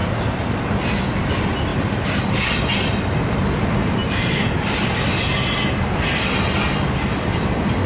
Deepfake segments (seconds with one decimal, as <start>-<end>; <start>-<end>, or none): 0.0-0.6; 1.7-2.2; 4.0-4.9